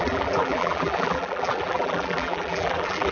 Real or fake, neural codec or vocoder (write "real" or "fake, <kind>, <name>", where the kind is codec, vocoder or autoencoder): fake, vocoder, BigVGAN v2